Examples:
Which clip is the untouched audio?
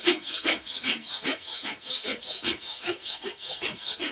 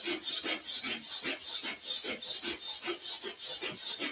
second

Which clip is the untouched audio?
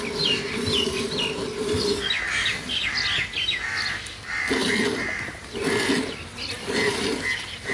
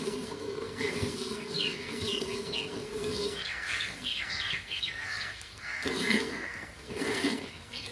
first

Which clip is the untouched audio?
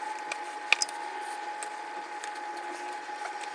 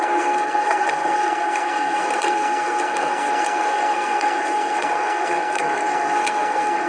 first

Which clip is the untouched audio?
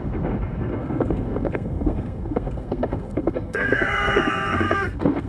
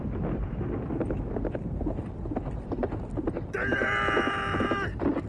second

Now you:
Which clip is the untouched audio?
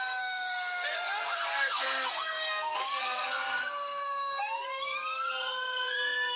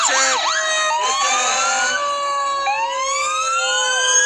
second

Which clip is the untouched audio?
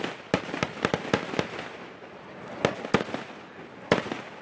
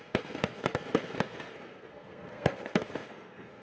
first